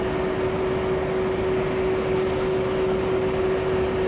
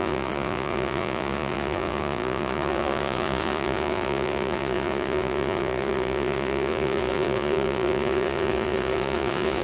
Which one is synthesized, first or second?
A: second